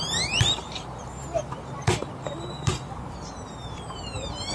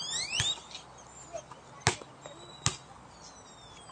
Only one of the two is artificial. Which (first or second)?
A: first